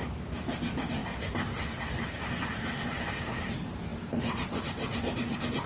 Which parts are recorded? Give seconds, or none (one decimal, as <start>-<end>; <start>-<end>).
0.0-5.7